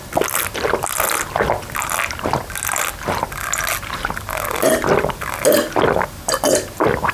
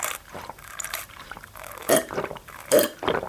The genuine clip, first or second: first